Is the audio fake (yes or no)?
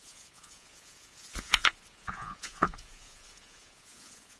yes